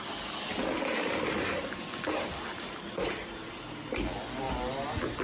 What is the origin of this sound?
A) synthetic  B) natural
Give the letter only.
B